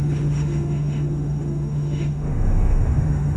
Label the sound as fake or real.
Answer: fake